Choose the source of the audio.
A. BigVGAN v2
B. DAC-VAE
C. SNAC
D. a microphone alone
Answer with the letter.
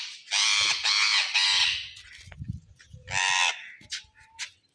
D